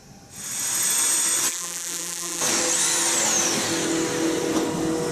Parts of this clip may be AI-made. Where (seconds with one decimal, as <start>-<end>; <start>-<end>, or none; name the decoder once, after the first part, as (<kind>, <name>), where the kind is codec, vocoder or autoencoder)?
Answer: 1.5-2.4 (vocoder, BigVGAN v2)